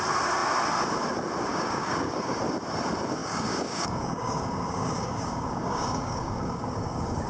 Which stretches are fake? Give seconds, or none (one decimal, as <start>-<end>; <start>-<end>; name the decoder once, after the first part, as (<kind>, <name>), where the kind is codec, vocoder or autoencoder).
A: 1.5-2.4 (codec, DAC); 3.2-7.3